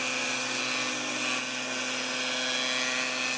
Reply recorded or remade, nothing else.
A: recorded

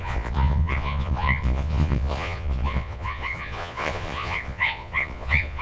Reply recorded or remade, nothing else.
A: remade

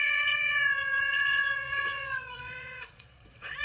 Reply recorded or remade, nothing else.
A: remade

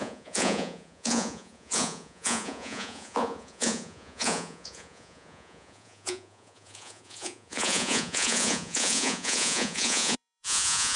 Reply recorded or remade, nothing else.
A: remade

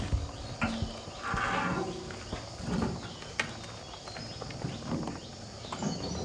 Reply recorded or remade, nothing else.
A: recorded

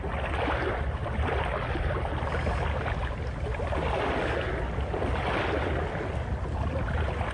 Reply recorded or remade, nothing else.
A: recorded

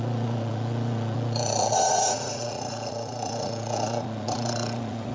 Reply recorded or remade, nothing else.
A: remade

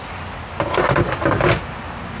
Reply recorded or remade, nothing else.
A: recorded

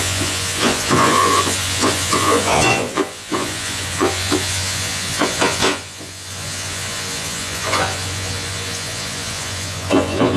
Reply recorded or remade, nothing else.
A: remade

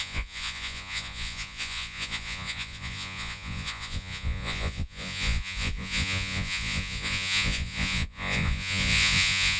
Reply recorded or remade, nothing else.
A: remade